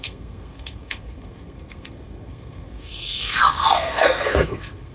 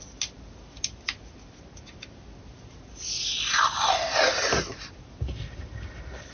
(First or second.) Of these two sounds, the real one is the second